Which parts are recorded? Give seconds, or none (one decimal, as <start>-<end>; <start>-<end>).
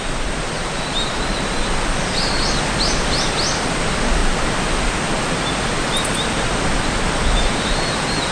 0.0-8.3